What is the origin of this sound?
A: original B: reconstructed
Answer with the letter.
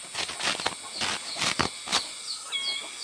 A